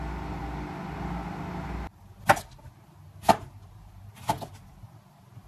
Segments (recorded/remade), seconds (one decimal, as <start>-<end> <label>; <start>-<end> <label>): 0.0-5.5 recorded

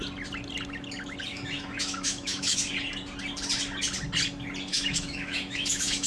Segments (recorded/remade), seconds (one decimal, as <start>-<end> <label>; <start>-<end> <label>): 0.0-1.3 recorded; 1.3-2.7 remade; 2.7-4.7 recorded; 4.7-6.1 remade

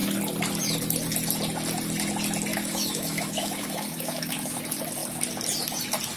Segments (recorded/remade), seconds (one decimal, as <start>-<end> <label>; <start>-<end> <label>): 0.0-2.5 recorded; 2.5-4.6 remade; 4.6-6.2 recorded